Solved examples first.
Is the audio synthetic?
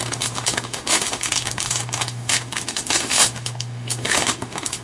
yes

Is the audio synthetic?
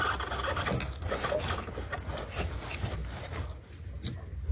no